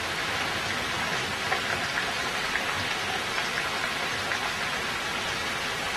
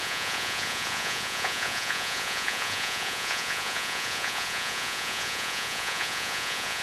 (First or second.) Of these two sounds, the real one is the first